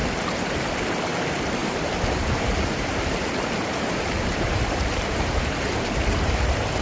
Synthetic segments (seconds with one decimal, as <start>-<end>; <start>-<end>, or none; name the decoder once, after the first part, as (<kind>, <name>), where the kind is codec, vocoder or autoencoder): 1.6-5.7 (vocoder, BigVGAN v2)